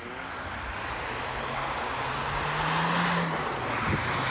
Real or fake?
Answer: real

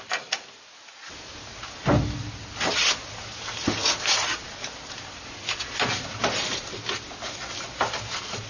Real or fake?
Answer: real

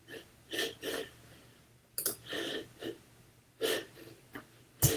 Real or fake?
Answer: real